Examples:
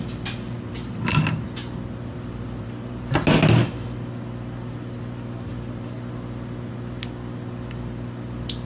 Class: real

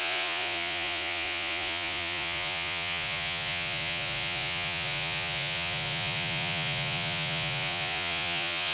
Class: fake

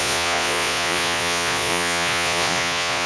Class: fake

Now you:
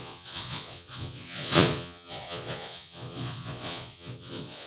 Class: fake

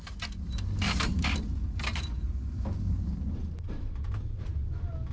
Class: real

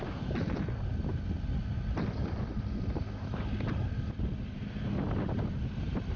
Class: real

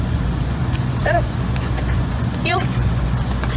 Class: fake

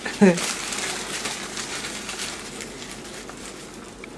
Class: real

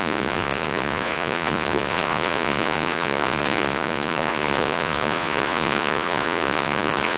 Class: fake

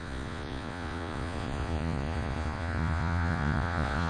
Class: fake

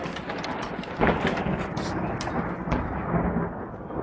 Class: real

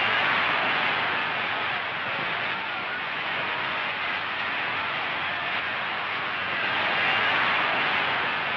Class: fake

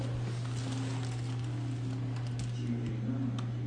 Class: real